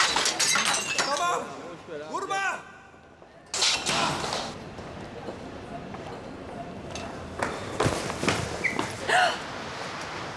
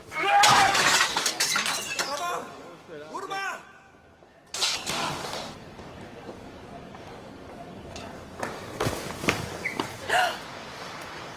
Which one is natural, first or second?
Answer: first